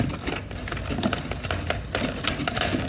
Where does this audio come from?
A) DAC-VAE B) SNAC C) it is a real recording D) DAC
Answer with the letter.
C